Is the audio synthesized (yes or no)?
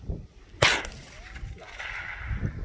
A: no